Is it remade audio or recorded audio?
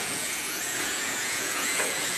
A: remade